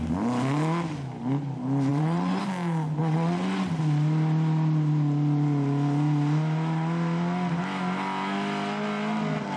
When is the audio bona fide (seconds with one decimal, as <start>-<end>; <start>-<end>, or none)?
0.0-1.9; 2.4-3.0; 3.8-9.6